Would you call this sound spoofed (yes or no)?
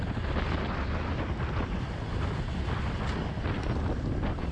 no